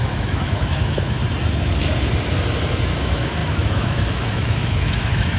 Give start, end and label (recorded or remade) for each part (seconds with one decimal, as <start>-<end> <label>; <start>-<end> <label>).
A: 0.0-1.2 remade; 1.2-2.7 recorded; 2.7-5.4 remade